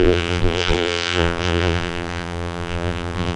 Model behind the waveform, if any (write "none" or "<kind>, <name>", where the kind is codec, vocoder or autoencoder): vocoder, BigVGAN v2